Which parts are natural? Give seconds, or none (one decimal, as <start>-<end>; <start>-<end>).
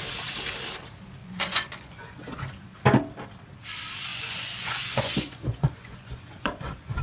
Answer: 0.0-1.2; 2.7-4.1